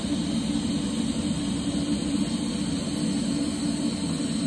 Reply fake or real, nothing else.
real